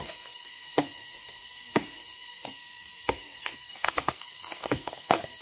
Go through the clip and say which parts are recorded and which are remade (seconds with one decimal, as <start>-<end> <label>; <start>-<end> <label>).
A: 0.0-5.4 remade